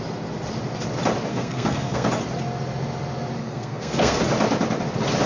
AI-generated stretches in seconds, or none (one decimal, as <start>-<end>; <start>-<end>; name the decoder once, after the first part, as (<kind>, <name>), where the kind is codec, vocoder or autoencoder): 1.3-2.1 (codec, SNAC); 3.4-4.2